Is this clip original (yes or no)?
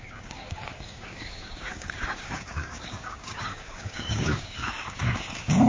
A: no